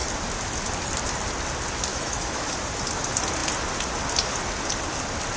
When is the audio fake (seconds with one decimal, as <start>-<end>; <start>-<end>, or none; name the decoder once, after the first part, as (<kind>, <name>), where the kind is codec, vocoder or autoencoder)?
1.9-2.5 (autoencoder, DAC-VAE)